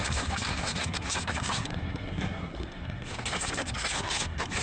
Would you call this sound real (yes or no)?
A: no